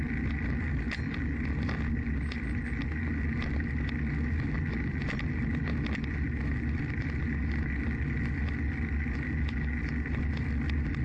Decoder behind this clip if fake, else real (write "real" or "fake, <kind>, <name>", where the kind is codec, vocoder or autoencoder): real